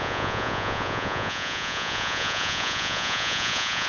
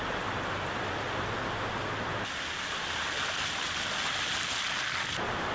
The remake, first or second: first